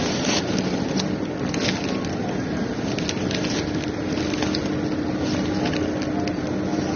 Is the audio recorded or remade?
recorded